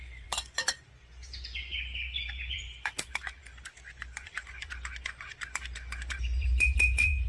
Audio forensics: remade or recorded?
remade